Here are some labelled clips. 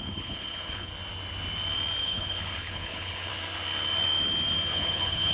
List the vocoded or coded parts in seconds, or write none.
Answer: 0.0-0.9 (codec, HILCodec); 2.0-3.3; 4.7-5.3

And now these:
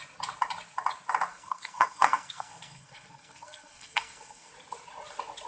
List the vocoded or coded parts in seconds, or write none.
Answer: 1.3-4.5 (codec, SNAC)